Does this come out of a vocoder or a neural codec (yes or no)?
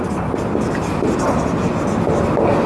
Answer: no